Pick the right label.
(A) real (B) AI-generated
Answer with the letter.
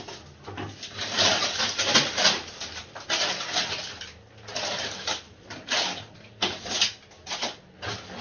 A